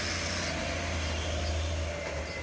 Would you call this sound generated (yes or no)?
no